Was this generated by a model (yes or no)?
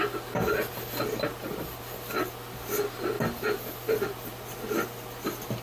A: no